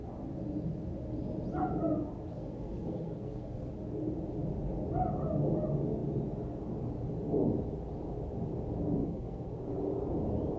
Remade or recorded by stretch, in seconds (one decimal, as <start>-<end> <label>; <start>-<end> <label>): 0.0-2.3 recorded; 2.3-3.7 remade; 3.7-9.0 recorded; 9.0-9.7 remade; 9.7-10.6 recorded